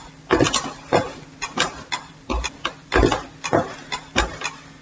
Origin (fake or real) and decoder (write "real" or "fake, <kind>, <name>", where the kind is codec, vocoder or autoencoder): real